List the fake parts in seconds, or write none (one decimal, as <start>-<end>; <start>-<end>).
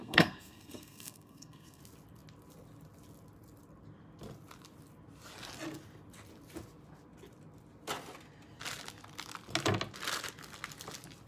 0.0-1.8